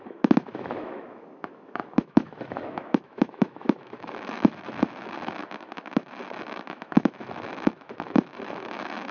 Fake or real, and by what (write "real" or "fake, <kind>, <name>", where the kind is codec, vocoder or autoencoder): fake, autoencoder, DAC-VAE